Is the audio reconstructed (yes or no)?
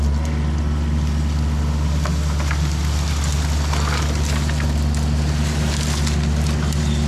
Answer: no